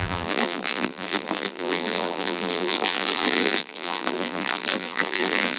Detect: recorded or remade remade